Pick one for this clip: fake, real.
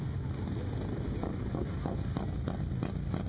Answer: real